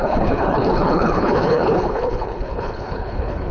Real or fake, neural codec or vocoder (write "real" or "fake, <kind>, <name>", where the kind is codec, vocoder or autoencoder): fake, codec, HILCodec